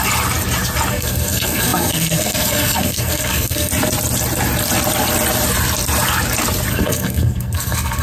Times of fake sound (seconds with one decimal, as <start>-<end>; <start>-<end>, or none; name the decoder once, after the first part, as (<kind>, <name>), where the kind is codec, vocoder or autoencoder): 0.9-3.7 (codec, SNAC); 6.7-8.0

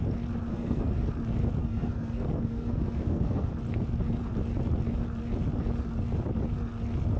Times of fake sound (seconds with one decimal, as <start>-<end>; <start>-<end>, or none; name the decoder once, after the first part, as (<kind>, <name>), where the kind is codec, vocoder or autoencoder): 0.5-1.1 (codec, SNAC); 1.6-3.5